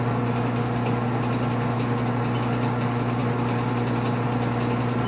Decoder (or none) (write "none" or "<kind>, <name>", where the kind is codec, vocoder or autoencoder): none